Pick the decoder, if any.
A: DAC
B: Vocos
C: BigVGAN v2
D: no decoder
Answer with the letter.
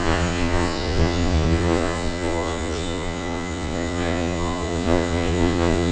B